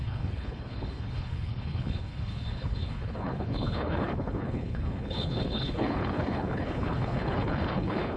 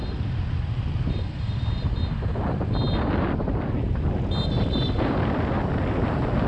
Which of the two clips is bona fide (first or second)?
second